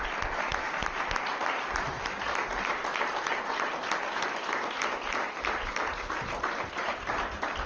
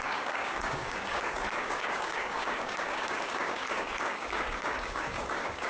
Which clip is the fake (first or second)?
second